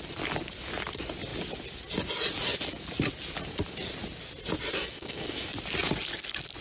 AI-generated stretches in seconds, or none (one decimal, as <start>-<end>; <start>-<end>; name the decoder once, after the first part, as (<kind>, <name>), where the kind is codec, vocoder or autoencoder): 4.8-5.5 (autoencoder, DAC-VAE)